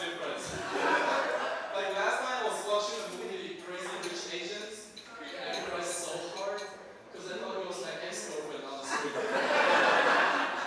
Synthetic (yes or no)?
no